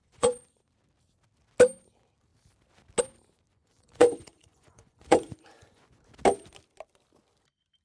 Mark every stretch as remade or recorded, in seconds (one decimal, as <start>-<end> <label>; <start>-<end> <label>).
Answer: 0.0-0.6 remade; 0.6-3.5 recorded; 3.5-6.0 remade; 6.0-7.8 recorded